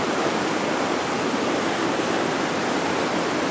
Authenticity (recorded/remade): recorded